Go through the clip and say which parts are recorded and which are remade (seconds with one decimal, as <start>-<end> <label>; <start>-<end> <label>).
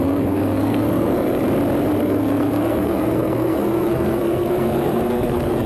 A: 0.0-1.4 remade; 1.4-2.0 recorded; 2.0-5.7 remade